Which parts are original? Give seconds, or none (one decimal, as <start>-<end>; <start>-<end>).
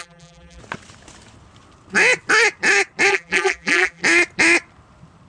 0.6-3.1; 4.0-5.3